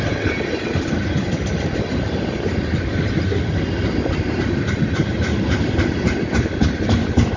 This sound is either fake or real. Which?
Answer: real